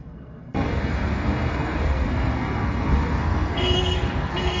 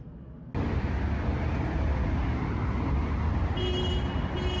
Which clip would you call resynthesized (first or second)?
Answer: first